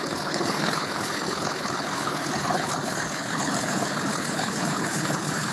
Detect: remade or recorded remade